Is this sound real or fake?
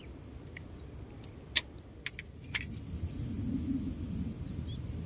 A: real